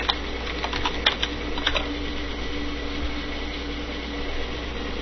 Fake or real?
real